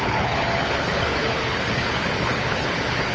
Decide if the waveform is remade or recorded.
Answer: remade